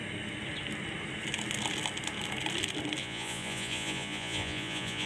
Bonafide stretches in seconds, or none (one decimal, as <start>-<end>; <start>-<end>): 0.0-3.0